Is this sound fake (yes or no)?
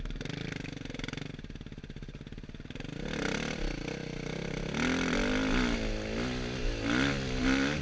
no